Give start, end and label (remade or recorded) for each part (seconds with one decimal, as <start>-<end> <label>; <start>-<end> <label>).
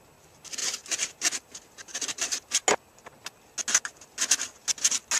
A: 0.0-0.6 recorded; 0.6-2.5 remade; 2.5-5.2 recorded